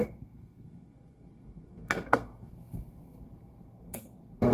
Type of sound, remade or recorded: remade